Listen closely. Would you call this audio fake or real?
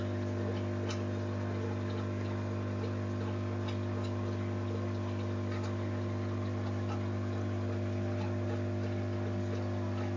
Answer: real